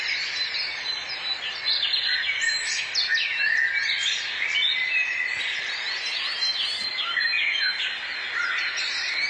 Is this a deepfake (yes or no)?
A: no